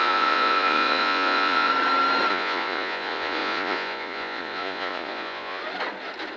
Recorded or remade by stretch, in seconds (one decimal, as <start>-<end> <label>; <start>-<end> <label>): 0.0-1.7 remade; 1.7-2.3 recorded; 2.3-5.6 remade; 5.6-6.4 recorded